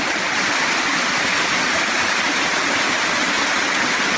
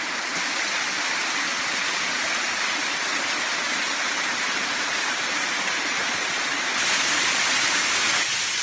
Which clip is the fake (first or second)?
first